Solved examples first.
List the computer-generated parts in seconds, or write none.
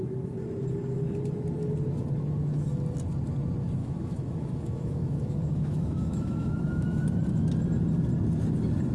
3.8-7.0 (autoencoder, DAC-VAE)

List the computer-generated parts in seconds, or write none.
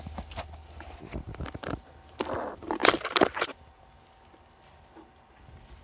none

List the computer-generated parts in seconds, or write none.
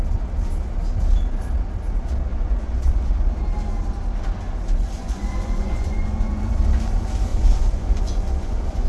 2.3-3.1 (vocoder, Vocos); 5.0-6.4; 7.3-8.9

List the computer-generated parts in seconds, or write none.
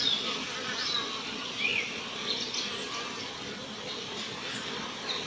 none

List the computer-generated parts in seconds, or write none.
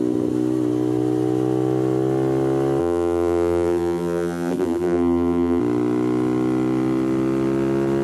2.8-5.6 (vocoder, BigVGAN v2)